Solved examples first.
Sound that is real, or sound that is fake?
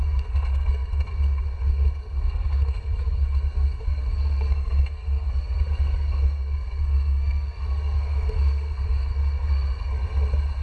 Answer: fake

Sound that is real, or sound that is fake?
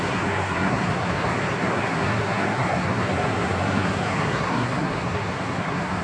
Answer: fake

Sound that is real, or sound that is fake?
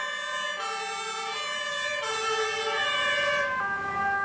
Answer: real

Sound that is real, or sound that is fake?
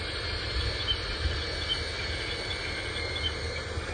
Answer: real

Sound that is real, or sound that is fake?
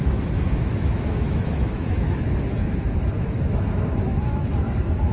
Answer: fake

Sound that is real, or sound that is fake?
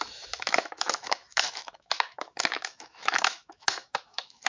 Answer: fake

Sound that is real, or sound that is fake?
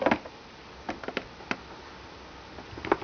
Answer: real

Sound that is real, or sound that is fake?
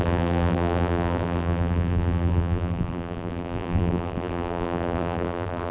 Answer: fake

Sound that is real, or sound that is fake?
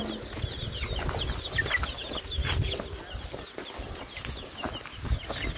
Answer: real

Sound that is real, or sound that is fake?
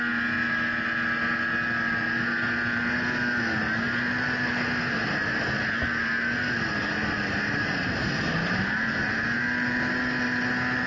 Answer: real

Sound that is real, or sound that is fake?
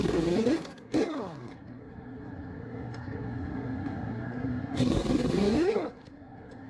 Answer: fake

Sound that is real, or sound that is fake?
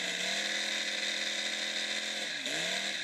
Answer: real